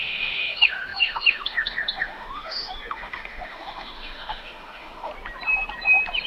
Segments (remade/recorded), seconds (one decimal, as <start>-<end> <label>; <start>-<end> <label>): 0.0-5.1 remade; 5.1-6.3 recorded